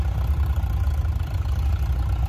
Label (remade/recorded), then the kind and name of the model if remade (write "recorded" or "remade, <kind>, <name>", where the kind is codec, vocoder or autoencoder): recorded